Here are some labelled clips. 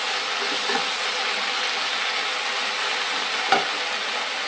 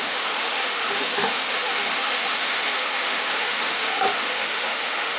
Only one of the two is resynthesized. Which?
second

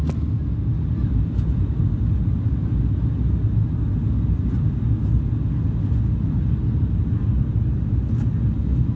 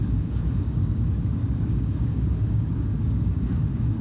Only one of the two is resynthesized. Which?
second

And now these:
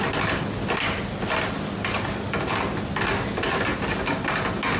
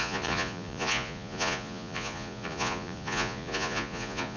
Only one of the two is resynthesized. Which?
second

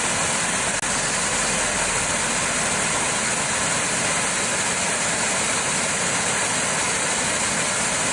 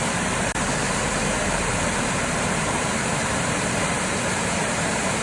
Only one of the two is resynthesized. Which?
second